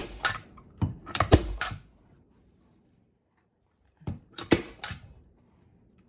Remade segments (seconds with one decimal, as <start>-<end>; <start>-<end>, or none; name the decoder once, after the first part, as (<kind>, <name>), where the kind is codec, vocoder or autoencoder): 0.0-6.1 (vocoder, BigVGAN v2)